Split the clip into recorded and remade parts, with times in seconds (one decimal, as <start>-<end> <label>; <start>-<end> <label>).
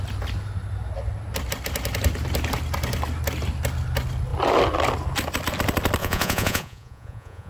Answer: 0.0-6.0 recorded; 6.0-7.5 remade